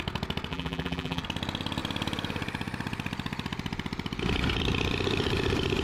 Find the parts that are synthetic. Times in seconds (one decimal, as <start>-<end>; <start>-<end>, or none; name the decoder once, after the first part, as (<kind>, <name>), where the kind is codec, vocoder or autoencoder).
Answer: 0.5-1.2 (vocoder, BigVGAN v2)